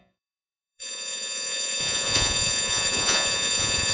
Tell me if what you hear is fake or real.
fake